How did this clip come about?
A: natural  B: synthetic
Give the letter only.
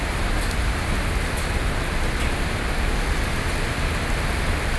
A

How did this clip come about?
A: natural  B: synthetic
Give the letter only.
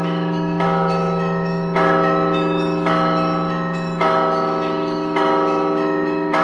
B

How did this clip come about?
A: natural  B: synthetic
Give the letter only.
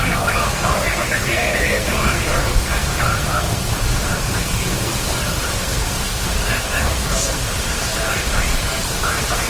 B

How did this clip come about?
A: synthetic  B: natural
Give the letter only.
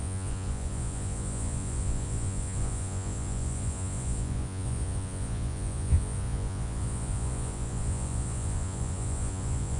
A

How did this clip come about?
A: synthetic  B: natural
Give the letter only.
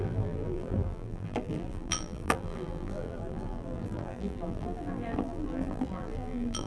A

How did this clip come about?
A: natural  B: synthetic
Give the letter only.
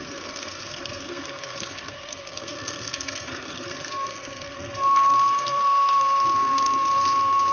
B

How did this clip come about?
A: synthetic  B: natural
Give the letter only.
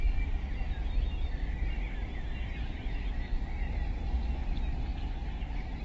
B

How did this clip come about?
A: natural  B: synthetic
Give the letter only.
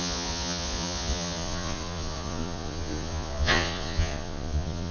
B